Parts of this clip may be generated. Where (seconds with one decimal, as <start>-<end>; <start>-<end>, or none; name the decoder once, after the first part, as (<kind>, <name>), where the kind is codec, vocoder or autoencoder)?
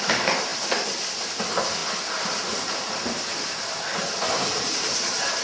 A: 0.5-1.4 (vocoder, BigVGAN v2)